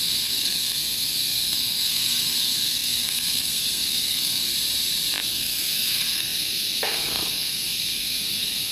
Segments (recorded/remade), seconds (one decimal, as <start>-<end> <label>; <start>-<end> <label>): 0.0-4.5 remade; 4.5-5.3 recorded; 5.3-8.7 remade